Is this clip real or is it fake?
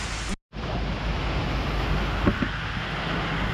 real